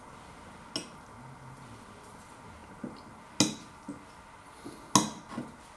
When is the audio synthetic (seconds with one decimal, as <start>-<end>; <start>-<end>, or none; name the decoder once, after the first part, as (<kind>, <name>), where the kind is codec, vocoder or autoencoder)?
none